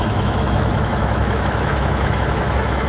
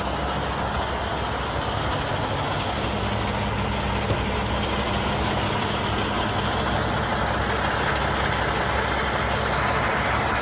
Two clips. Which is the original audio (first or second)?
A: second